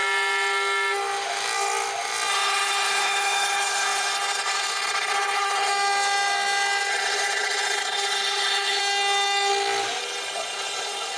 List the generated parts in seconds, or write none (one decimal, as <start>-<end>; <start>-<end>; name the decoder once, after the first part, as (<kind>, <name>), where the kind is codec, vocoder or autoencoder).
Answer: 2.3-5.7 (codec, HILCodec); 6.9-8.8; 10.0-11.2